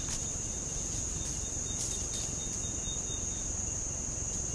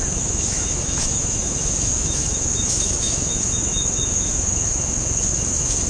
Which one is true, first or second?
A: first